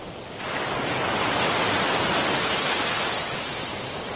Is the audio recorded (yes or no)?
yes